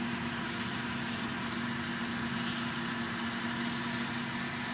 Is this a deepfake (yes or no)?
no